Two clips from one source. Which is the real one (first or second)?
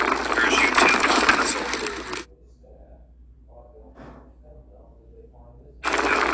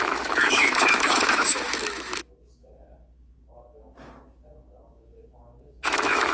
first